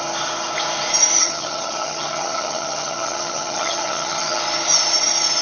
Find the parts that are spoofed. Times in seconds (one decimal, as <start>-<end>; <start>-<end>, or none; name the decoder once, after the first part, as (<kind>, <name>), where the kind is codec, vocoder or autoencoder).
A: 1.2-4.4 (vocoder, HiFi-GAN)